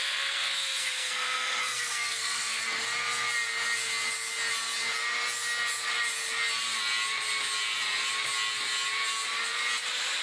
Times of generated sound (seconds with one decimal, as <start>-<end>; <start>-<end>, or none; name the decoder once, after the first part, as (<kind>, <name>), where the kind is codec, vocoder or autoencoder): 0.0-2.6 (codec, SNAC)